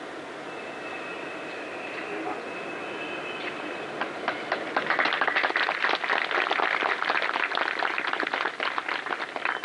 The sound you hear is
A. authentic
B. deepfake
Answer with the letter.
A